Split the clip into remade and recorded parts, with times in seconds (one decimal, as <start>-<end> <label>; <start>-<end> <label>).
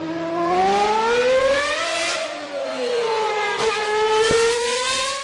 0.0-0.6 remade; 0.6-1.4 recorded; 1.4-5.2 remade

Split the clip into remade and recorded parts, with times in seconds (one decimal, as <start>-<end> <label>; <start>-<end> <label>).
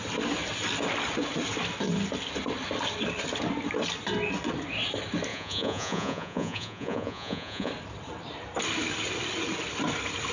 0.0-5.3 recorded; 5.3-7.7 remade; 7.7-10.3 recorded